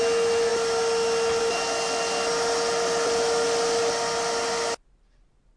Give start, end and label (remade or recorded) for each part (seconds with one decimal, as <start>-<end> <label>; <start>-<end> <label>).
0.0-5.6 recorded